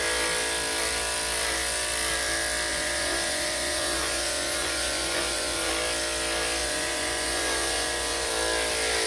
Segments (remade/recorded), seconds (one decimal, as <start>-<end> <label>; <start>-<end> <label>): 0.0-2.7 recorded; 2.7-5.7 remade; 5.7-6.6 recorded; 6.6-8.3 remade; 8.3-9.1 recorded